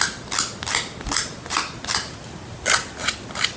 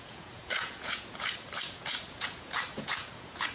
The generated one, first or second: second